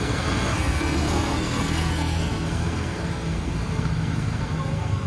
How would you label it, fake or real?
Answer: fake